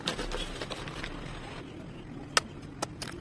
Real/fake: real